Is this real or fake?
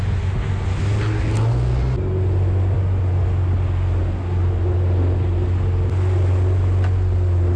real